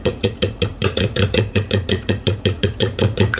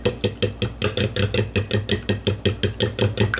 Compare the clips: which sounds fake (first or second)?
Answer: first